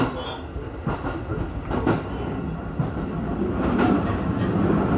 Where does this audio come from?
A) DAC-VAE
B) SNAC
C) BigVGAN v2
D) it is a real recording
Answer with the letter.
D